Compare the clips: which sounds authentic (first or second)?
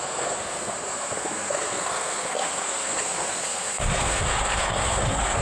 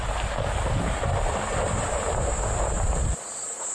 second